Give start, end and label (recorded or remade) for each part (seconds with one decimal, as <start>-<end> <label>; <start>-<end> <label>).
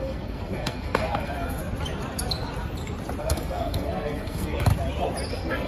0.0-1.6 remade; 1.6-3.2 recorded; 3.2-4.7 remade; 4.7-5.3 recorded; 5.3-5.7 remade